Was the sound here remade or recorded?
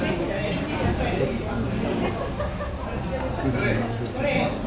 recorded